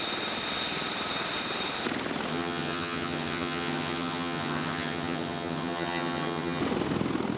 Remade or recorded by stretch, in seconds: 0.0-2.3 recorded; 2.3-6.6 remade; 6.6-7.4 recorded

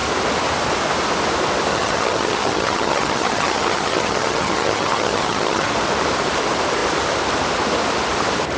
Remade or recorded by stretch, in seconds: 0.0-1.7 recorded; 1.7-5.7 remade; 5.7-8.6 recorded

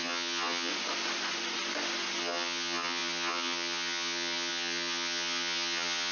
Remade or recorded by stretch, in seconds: 0.0-0.7 remade; 0.7-2.2 recorded; 2.2-6.1 remade

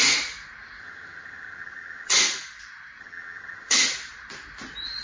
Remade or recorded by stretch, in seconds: 0.0-0.8 recorded; 0.8-2.2 remade; 2.2-3.0 recorded; 3.0-3.8 remade; 3.8-5.0 recorded

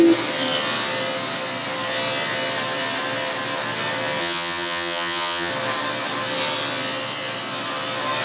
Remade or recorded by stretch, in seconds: 0.0-4.2 recorded; 4.2-5.5 remade; 5.5-8.2 recorded

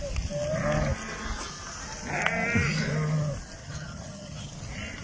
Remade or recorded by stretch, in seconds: 0.0-3.6 recorded; 3.6-4.5 remade; 4.5-5.0 recorded

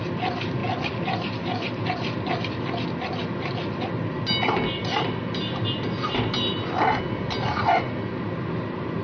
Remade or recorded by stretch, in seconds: 0.0-9.0 recorded

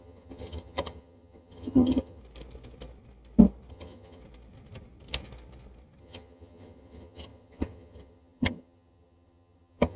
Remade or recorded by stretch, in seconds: 0.0-2.2 remade; 2.2-3.7 recorded; 3.7-4.2 remade; 4.2-6.0 recorded; 6.0-10.0 remade